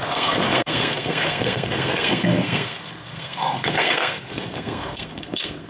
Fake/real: fake